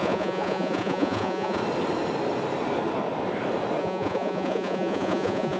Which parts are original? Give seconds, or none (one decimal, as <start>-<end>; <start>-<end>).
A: 1.6-3.8